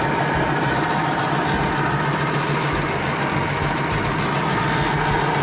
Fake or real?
real